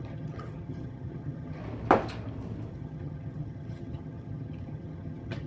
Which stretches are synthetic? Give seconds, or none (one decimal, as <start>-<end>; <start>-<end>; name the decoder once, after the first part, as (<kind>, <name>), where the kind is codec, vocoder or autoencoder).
0.0-1.6 (vocoder, HiFi-GAN); 2.7-5.5